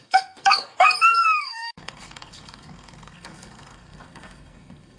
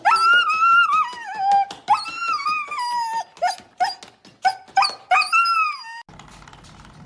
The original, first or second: second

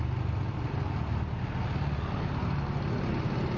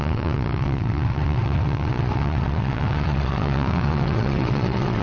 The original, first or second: first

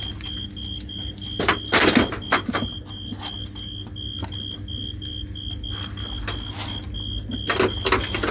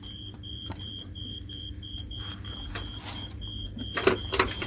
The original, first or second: first